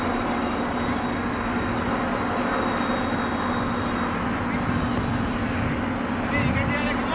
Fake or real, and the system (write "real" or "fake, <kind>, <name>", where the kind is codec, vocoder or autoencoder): real